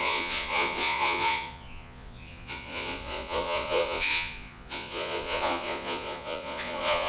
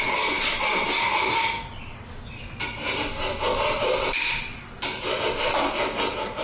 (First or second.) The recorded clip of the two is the second